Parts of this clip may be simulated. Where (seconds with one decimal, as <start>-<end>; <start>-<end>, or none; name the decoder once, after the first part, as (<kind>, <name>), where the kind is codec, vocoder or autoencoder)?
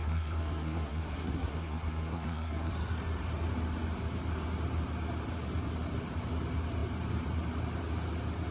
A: 0.0-2.7 (codec, SNAC)